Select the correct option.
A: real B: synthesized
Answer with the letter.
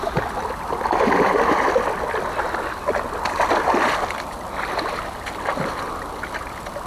A